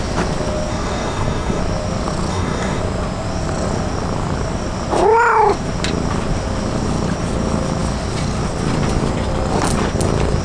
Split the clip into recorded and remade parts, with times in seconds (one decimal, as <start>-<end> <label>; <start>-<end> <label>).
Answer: 0.0-0.7 recorded; 0.7-1.6 remade; 1.6-2.3 recorded; 2.3-2.8 remade; 2.8-10.4 recorded

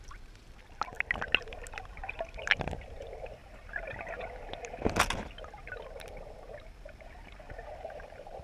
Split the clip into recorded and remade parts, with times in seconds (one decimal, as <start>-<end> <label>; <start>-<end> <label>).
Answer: 0.0-8.4 recorded

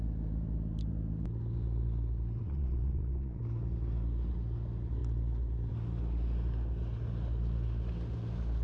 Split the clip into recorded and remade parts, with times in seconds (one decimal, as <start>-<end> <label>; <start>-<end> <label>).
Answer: 0.0-2.4 recorded; 2.4-3.4 remade; 3.4-8.6 recorded

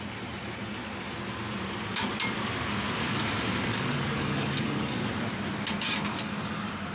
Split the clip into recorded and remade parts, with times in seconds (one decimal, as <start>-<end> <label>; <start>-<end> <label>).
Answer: 0.0-3.7 recorded; 3.7-5.1 remade; 5.1-6.1 recorded; 6.1-6.9 remade

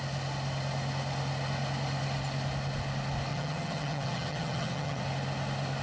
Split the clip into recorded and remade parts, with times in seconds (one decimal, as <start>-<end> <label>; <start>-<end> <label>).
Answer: 0.0-3.3 recorded; 3.3-5.0 remade; 5.0-5.8 recorded

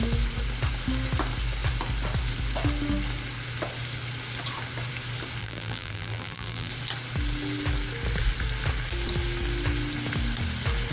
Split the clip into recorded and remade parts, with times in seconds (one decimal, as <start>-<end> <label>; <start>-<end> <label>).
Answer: 0.0-5.4 recorded; 5.4-6.7 remade; 6.7-10.9 recorded

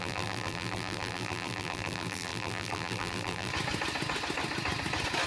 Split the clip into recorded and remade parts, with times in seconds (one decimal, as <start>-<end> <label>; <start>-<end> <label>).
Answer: 0.0-3.5 remade; 3.5-5.3 recorded

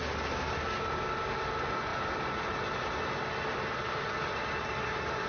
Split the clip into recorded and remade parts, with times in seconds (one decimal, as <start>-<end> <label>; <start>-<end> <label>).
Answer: 0.0-5.3 recorded